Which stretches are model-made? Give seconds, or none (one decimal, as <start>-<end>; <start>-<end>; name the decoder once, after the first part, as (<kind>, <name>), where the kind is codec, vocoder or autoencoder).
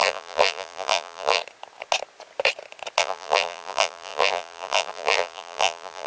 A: 0.0-1.4 (vocoder, BigVGAN v2); 3.0-6.1